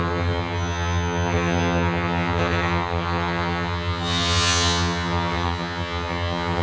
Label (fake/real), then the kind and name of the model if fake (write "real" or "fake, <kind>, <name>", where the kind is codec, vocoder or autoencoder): fake, vocoder, HiFi-GAN